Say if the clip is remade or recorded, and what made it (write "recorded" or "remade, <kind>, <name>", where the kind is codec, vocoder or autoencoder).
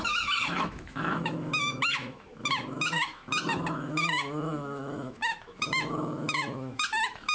remade, autoencoder, DAC-VAE